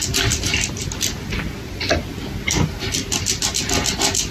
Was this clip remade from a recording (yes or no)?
no